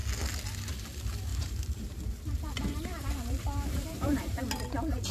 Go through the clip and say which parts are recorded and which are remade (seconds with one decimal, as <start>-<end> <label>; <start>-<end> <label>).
0.0-1.3 recorded; 1.3-4.4 remade; 4.4-5.1 recorded

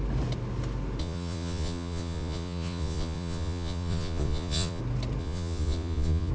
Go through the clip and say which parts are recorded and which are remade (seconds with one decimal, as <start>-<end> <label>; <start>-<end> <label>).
0.0-1.0 recorded; 1.0-4.8 remade; 4.8-5.2 recorded; 5.2-6.3 remade

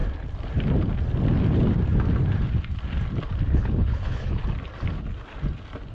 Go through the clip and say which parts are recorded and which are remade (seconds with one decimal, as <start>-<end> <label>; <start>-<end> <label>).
0.0-3.5 recorded; 3.5-4.4 remade; 4.4-5.9 recorded

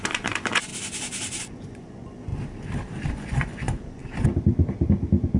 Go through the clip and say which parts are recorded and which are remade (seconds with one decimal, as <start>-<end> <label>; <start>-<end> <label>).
0.0-0.7 remade; 0.7-1.4 recorded; 1.4-2.3 remade; 2.3-3.1 recorded; 3.1-4.0 remade; 4.0-5.4 recorded